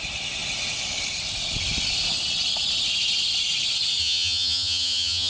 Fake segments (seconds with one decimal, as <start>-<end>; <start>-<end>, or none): 4.0-5.3